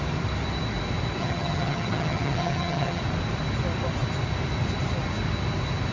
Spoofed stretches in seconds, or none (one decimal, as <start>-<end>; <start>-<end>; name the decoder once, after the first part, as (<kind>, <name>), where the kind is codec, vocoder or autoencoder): 1.2-3.0 (vocoder, HiFi-GAN)